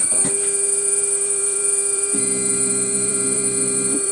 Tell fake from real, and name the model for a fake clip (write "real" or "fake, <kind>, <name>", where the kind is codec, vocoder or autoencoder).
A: fake, vocoder, BigVGAN v2